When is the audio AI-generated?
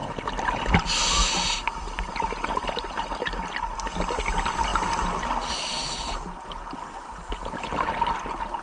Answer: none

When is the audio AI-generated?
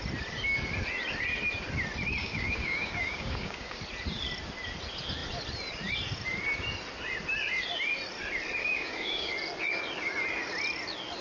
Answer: 2.2-3.8 (codec, DAC); 8.6-9.3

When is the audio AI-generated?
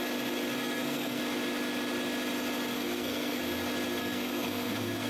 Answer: 0.6-1.2 (codec, SNAC); 2.7-3.4; 4.0-5.1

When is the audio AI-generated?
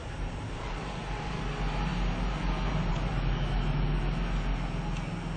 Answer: 0.0-1.4 (vocoder, BigVGAN v2)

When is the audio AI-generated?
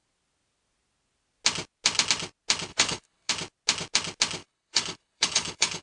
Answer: 2.7-3.3 (codec, HILCodec); 4.4-5.8